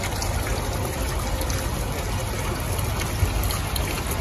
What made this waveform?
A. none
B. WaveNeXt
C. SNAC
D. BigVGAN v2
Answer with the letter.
A